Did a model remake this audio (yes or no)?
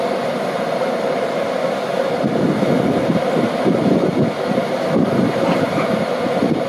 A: no